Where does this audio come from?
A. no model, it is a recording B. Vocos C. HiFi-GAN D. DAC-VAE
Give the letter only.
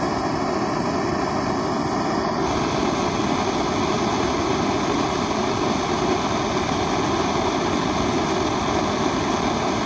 A